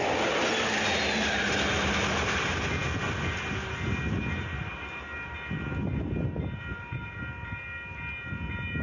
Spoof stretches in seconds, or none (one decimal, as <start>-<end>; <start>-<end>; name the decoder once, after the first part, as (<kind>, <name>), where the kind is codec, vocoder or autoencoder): none